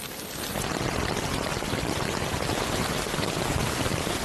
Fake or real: fake